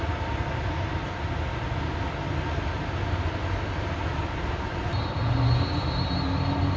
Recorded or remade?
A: recorded